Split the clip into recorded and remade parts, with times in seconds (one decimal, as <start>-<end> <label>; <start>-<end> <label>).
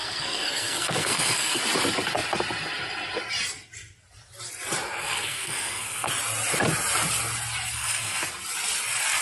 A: 0.0-1.6 remade; 1.6-5.0 recorded; 5.0-6.1 remade; 6.1-7.7 recorded; 7.7-8.2 remade; 8.2-9.2 recorded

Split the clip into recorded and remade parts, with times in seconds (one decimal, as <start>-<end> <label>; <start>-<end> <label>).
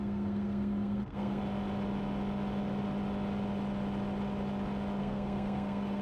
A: 0.0-1.4 remade; 1.4-5.0 recorded; 5.0-6.0 remade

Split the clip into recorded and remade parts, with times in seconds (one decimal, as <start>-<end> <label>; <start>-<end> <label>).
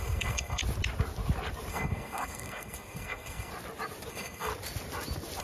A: 0.0-0.6 remade; 0.6-1.7 recorded; 1.7-3.5 remade; 3.5-4.1 recorded; 4.1-4.5 remade; 4.5-5.4 recorded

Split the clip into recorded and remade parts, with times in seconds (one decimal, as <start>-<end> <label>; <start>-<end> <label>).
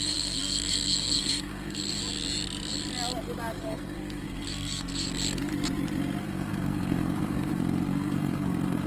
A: 0.0-2.0 remade; 2.0-3.6 recorded; 3.6-5.5 remade; 5.5-6.2 recorded; 6.2-8.9 remade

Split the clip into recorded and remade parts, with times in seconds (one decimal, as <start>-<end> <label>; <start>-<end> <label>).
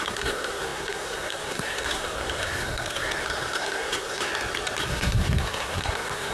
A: 0.0-4.3 remade; 4.3-4.8 recorded; 4.8-6.3 remade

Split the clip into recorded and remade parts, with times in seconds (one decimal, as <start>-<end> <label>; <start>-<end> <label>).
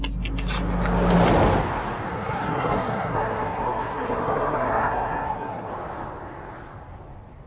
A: 0.0-2.1 recorded; 2.1-5.7 remade; 5.7-7.5 recorded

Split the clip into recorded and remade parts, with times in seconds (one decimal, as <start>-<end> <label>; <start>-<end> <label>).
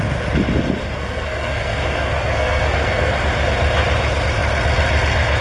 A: 0.0-0.8 recorded; 0.8-3.1 remade; 3.1-5.4 recorded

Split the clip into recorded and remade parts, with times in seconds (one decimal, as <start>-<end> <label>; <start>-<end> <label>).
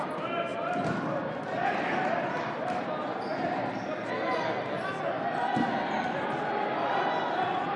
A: 0.0-7.8 recorded